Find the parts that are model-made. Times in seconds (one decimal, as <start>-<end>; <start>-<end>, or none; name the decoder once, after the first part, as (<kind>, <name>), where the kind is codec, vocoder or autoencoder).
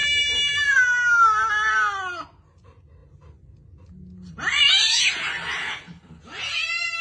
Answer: 5.6-6.2 (codec, HILCodec)